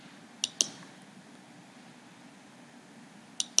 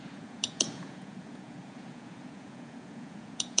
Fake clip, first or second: second